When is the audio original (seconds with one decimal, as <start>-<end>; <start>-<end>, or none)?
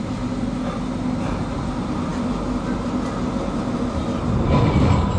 0.0-5.2